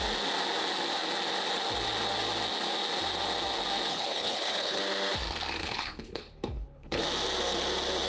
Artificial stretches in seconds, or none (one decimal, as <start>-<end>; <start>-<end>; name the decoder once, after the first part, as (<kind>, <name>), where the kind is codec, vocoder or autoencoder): 3.9-4.8 (codec, HILCodec); 5.6-7.0